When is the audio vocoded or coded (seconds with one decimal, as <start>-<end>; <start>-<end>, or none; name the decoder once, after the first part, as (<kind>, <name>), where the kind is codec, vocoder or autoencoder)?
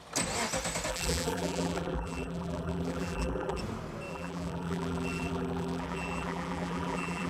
0.9-3.6 (vocoder, BigVGAN v2); 4.1-7.3